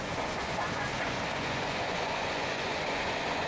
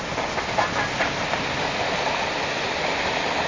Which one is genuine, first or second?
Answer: second